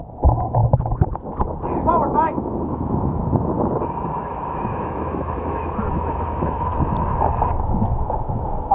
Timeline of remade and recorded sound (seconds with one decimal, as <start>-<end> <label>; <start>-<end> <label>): 0.0-0.6 remade; 0.6-1.9 recorded; 1.9-3.2 remade; 3.2-4.2 recorded; 4.2-6.7 remade; 6.7-7.6 recorded; 7.6-8.7 remade